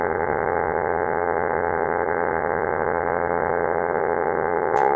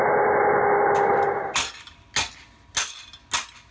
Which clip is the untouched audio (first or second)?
second